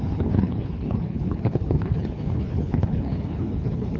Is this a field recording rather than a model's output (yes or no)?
no